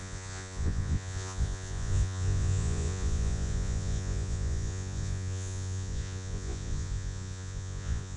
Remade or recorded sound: remade